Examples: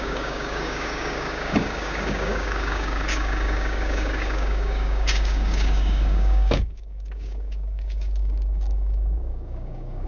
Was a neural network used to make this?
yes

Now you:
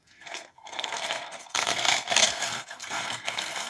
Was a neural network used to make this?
yes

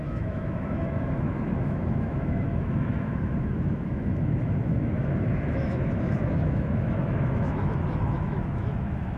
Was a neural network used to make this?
yes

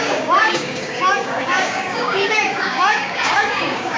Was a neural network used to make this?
yes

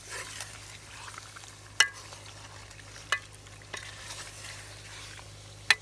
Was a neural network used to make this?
no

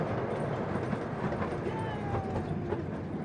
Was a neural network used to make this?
no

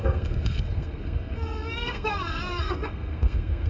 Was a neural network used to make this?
yes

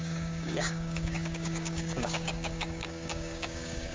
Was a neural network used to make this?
yes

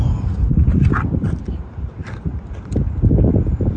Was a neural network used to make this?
no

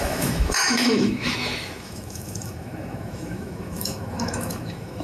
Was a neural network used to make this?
yes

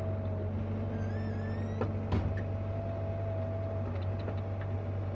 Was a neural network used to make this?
no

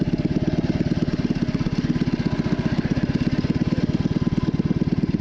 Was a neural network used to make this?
no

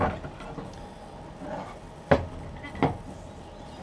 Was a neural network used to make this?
no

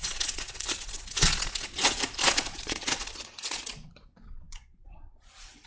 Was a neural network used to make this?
yes